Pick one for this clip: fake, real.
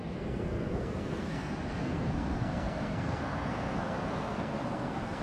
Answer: fake